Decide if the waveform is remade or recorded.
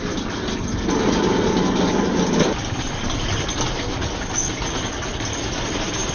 recorded